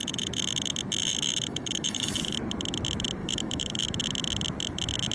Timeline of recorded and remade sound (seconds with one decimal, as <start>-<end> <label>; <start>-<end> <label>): 0.0-1.0 recorded; 1.0-2.1 remade; 2.1-3.2 recorded; 3.2-3.9 remade; 3.9-5.1 recorded

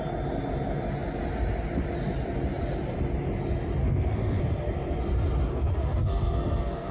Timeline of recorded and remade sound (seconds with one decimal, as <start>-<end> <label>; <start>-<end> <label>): 0.0-3.8 recorded; 3.8-4.4 remade; 4.4-5.5 recorded; 5.5-6.9 remade

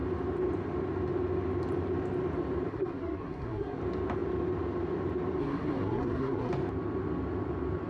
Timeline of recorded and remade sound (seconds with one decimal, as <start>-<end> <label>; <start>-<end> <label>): 0.0-2.7 recorded; 2.7-3.8 remade; 3.8-5.4 recorded; 5.4-6.5 remade; 6.5-7.9 recorded

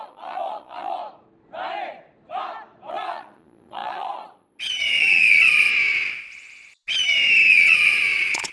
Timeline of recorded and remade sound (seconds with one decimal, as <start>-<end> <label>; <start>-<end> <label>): 0.0-1.0 remade; 1.0-2.9 recorded; 2.9-5.7 remade; 5.7-7.5 recorded; 7.5-8.5 remade

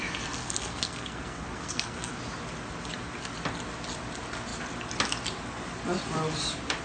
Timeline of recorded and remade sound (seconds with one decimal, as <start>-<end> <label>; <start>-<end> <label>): 0.0-0.4 recorded; 0.4-2.2 remade; 2.2-6.8 recorded

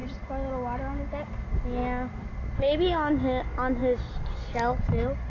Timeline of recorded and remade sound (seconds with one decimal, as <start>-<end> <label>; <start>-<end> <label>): 0.0-5.3 recorded

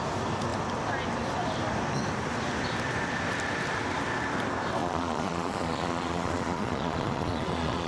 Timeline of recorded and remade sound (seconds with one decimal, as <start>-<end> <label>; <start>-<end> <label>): 0.0-4.8 recorded; 4.8-7.9 remade

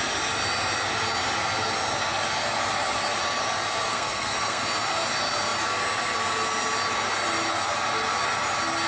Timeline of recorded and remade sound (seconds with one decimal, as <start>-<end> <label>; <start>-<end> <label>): 0.0-3.9 recorded; 3.9-4.6 remade; 4.6-8.9 recorded